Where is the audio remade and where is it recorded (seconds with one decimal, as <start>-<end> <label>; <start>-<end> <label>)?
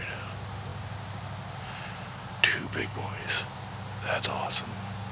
0.0-2.5 recorded; 2.5-3.2 remade; 3.2-5.1 recorded